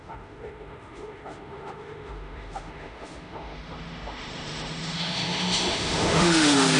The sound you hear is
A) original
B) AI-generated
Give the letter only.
B